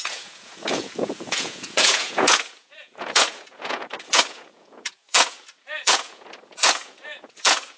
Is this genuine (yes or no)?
no